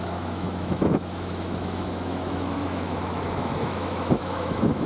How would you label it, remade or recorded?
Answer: remade